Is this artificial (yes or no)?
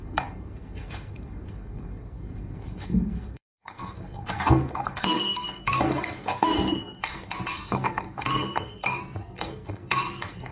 yes